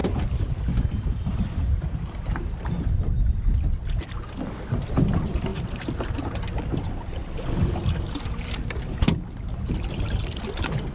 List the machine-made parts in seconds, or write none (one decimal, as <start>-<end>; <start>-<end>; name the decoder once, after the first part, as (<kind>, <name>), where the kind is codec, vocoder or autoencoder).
0.0-3.7 (vocoder, BigVGAN v2); 5.5-10.4